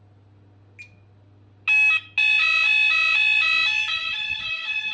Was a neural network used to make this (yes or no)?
no